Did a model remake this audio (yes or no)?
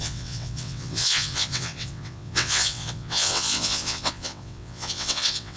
yes